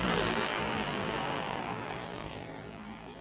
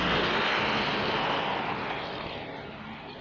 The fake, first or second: first